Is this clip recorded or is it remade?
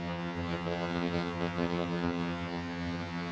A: remade